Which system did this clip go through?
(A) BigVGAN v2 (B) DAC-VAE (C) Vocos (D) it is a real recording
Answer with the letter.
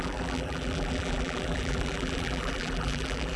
A